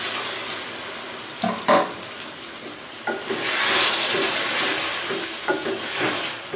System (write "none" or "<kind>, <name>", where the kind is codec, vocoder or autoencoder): none